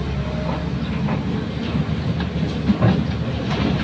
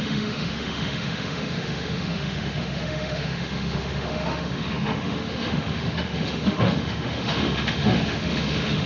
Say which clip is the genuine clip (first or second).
first